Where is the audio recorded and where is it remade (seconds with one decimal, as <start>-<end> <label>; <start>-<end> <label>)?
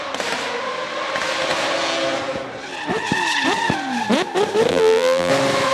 0.0-4.7 recorded; 4.7-5.3 remade; 5.3-5.7 recorded